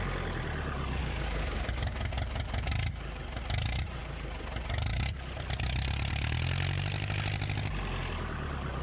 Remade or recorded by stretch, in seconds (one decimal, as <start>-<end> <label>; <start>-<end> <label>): 0.0-1.0 recorded; 1.0-2.1 remade; 2.1-8.8 recorded